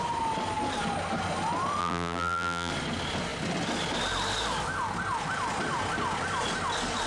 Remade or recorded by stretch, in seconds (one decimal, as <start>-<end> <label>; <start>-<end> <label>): 0.0-1.8 recorded; 1.8-2.7 remade; 2.7-7.1 recorded